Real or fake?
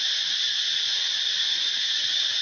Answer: fake